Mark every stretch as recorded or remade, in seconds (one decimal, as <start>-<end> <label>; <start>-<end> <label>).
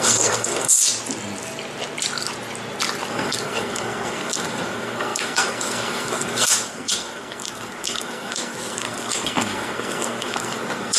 0.0-0.8 remade; 0.8-3.1 recorded; 3.1-11.0 remade